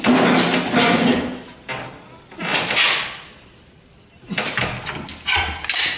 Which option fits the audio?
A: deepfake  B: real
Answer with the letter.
B